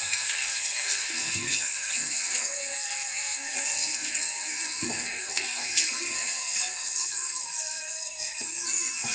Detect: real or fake fake